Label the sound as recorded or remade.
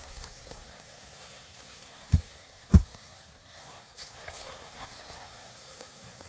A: remade